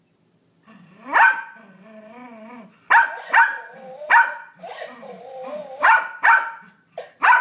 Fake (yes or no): no